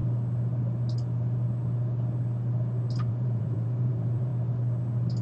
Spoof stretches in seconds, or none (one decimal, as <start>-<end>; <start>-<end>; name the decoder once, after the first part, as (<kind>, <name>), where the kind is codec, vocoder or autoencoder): 3.1-4.3 (vocoder, Vocos)